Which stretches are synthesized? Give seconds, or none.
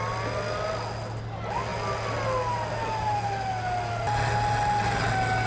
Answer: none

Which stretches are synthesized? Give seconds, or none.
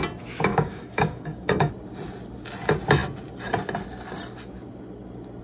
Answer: 0.5-1.7 (codec, DAC)